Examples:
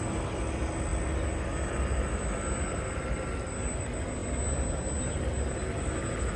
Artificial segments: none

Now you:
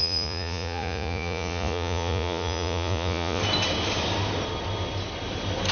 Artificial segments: 0.0-3.4